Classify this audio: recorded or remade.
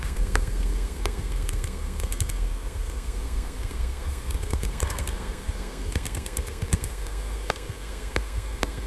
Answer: remade